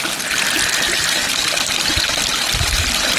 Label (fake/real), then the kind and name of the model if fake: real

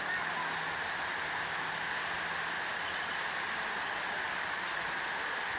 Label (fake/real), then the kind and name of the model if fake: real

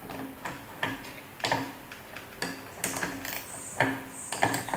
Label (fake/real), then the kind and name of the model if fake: real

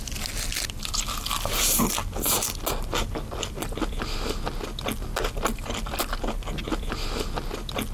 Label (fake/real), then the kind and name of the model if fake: real